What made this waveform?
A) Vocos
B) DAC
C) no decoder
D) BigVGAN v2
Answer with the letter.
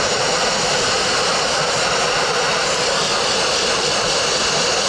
C